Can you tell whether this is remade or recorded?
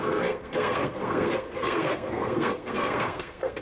remade